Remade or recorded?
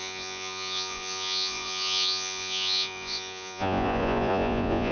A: remade